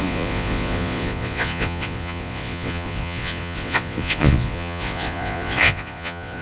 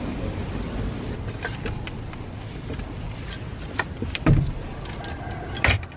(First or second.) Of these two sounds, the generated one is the first